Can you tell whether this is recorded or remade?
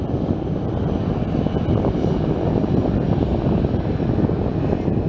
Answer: recorded